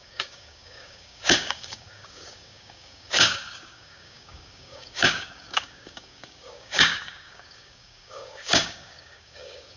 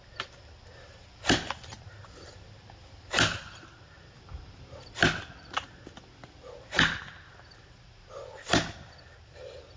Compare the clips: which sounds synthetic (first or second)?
first